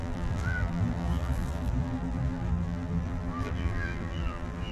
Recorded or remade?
remade